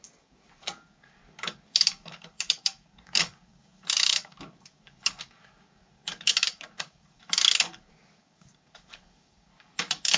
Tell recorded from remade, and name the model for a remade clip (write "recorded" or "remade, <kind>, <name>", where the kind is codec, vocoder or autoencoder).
remade, codec, DAC